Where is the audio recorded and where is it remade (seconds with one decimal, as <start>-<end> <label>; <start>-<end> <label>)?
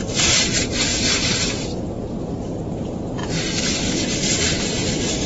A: 0.0-3.2 remade; 3.2-4.6 recorded; 4.6-5.3 remade